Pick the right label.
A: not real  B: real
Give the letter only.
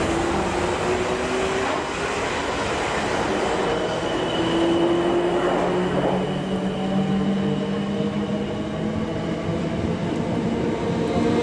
B